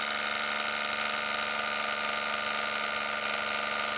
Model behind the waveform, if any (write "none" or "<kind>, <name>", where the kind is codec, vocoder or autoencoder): none